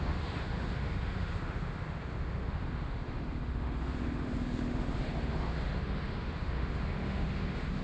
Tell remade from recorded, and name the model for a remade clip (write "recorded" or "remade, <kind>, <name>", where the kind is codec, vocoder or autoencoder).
remade, autoencoder, DAC-VAE